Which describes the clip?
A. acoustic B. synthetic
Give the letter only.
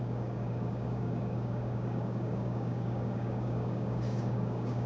B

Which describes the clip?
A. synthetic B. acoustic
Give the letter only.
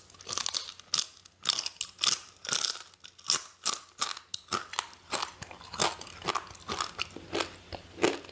B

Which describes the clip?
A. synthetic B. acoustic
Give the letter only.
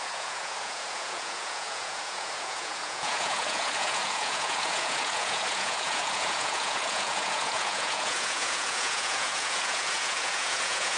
A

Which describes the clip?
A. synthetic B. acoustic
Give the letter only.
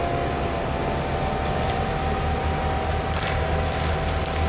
B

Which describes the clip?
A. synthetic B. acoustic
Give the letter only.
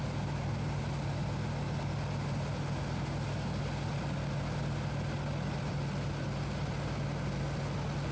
B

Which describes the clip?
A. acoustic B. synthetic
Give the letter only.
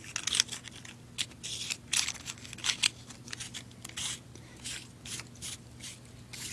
A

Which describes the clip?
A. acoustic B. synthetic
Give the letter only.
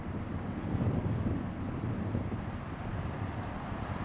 B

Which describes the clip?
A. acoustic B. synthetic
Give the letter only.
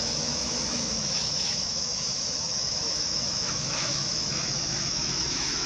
B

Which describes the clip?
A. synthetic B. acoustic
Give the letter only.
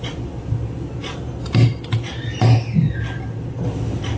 B